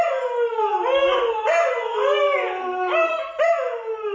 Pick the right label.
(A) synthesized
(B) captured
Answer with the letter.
B